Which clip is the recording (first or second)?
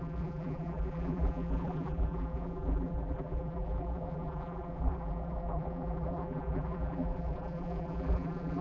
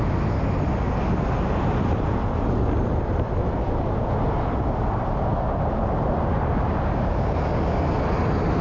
second